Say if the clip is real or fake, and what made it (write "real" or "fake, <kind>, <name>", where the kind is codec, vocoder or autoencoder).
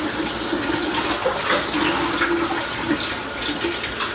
real